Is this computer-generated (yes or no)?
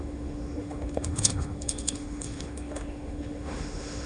yes